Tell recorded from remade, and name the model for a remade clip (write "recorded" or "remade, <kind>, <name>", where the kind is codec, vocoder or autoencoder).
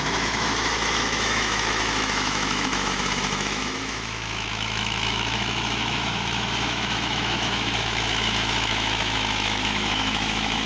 remade, autoencoder, DAC-VAE